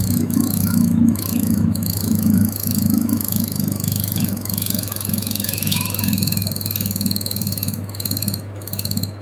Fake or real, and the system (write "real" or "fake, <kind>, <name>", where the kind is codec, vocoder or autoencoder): fake, autoencoder, DAC-VAE